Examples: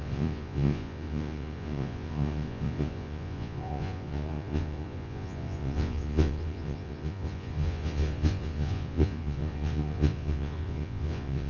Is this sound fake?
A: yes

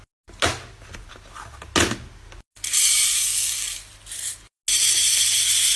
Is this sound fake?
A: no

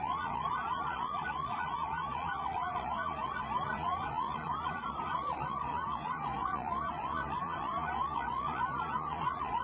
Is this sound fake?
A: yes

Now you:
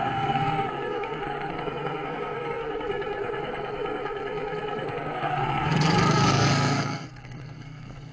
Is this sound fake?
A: yes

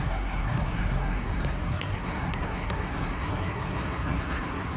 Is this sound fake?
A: yes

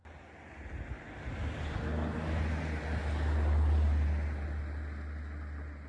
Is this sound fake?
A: no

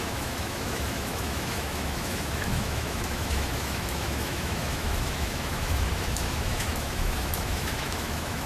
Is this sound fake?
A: yes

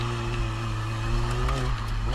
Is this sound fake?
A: no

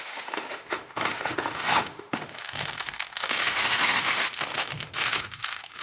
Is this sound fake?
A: yes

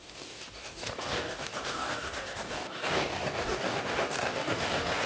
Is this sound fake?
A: yes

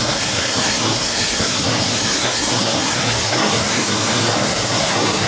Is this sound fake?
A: yes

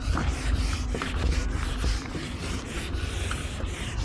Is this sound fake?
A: no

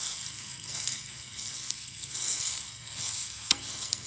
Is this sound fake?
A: yes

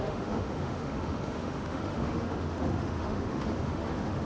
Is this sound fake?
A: yes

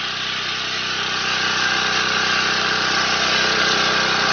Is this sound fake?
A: no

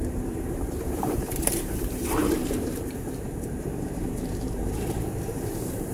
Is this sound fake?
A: yes